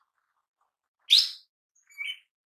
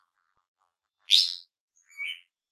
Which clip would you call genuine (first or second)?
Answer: first